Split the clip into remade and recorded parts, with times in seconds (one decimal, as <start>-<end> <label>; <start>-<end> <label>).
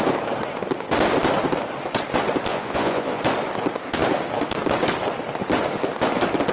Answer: 0.0-2.5 recorded; 2.5-3.2 remade; 3.2-6.5 recorded